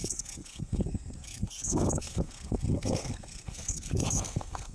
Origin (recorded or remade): remade